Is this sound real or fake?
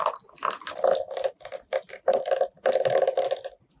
real